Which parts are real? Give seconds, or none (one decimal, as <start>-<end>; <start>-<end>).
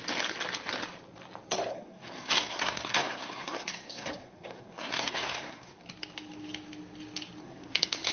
0.0-1.7; 5.8-7.4